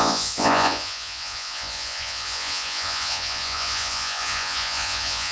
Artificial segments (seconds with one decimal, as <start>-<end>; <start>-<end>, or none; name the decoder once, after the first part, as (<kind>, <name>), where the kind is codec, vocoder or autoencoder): 0.0-5.3 (vocoder, Vocos)